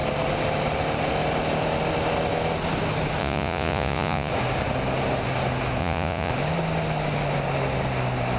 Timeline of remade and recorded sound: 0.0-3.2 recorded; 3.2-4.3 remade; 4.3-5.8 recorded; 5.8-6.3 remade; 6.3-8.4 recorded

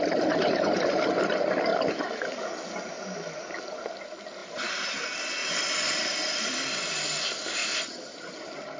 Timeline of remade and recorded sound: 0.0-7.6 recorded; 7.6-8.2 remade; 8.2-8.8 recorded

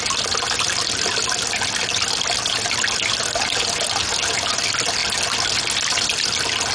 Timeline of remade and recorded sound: 0.0-6.7 recorded